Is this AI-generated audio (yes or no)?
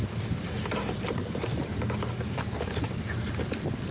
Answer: yes